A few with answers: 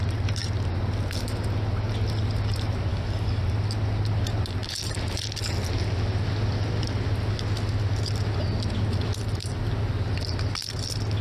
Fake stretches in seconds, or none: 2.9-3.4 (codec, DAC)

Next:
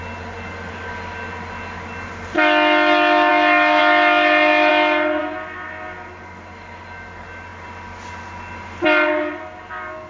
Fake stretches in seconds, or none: none

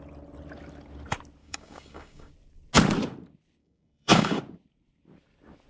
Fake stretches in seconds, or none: 1.4-2.3 (codec, DAC); 3.6-4.4

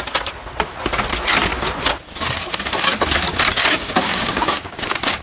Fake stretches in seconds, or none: 3.6-5.2 (codec, DAC)